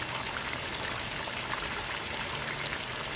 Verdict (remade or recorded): recorded